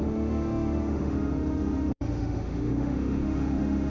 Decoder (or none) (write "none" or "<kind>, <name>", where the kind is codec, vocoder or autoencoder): autoencoder, DAC-VAE